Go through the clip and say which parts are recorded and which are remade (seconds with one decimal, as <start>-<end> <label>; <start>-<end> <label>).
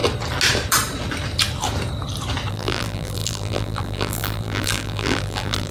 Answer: 0.0-2.5 recorded; 2.5-5.7 remade